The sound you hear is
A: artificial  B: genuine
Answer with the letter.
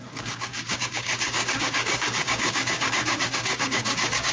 A